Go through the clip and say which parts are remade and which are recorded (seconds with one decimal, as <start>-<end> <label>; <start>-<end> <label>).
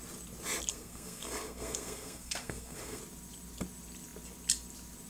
0.0-0.7 recorded; 0.7-3.0 remade; 3.0-5.1 recorded